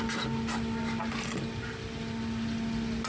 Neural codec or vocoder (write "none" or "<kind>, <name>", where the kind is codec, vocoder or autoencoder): none